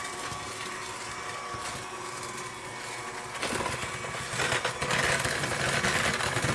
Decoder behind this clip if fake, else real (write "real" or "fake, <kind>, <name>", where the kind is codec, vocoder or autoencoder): real